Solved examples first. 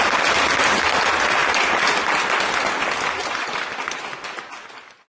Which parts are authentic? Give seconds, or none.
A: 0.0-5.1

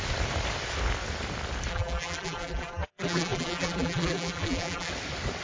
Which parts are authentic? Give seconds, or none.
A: 0.0-1.7; 4.9-5.4

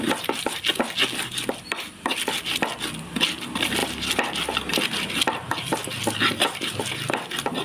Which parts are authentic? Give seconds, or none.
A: 0.0-7.6

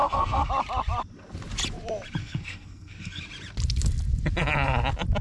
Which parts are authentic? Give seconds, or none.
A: 0.5-2.2; 3.2-5.2

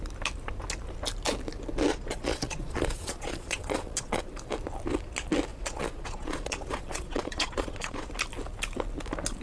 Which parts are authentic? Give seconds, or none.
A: 0.0-1.9; 4.2-5.5; 8.1-9.4

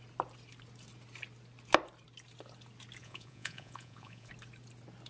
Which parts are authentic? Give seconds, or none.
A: 0.0-3.0; 4.3-5.1

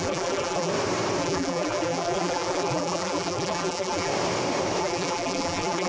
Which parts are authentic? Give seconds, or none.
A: 0.7-1.2; 4.1-4.8

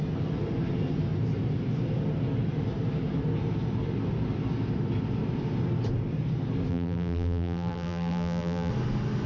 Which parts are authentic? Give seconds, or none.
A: 0.0-6.7; 8.7-9.3